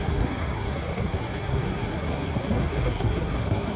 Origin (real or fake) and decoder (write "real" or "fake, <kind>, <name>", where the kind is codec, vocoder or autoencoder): fake, codec, SNAC